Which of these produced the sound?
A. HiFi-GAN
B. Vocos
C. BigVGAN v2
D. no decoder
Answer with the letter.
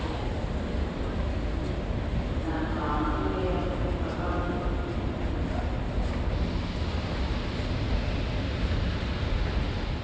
D